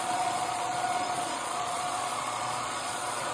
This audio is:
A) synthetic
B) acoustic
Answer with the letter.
A